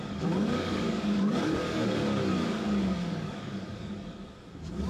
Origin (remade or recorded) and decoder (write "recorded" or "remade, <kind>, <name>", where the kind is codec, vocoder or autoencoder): remade, codec, DAC